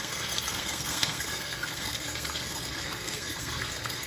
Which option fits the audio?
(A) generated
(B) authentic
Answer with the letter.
A